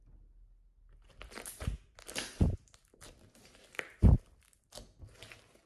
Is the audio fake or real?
real